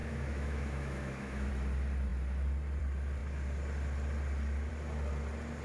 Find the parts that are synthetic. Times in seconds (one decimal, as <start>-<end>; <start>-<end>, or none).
0.0-1.5